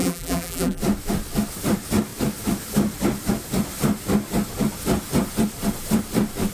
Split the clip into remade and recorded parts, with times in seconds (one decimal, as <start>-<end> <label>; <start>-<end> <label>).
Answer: 0.0-0.8 remade; 0.8-6.5 recorded